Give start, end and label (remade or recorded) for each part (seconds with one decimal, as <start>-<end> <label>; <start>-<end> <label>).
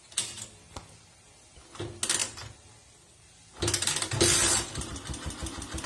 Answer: 0.0-5.9 recorded